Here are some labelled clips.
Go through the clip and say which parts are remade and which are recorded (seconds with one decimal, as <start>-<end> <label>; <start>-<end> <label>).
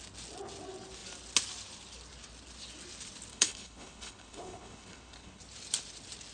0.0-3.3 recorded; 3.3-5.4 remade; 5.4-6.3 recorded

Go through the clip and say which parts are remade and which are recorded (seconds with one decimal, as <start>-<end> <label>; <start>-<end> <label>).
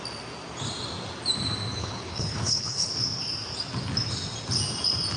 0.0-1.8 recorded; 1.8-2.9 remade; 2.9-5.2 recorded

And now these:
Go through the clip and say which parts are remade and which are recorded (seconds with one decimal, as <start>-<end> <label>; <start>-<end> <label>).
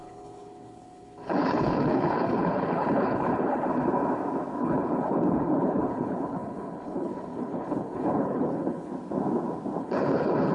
0.0-3.7 remade; 3.7-4.6 recorded; 4.6-8.9 remade; 8.9-9.8 recorded; 9.8-10.5 remade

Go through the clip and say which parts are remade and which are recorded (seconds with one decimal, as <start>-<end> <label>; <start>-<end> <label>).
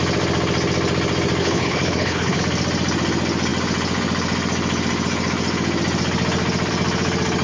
0.0-1.4 recorded; 1.4-2.4 remade; 2.4-7.4 recorded